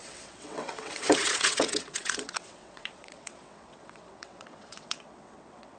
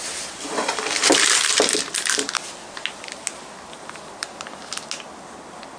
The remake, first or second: first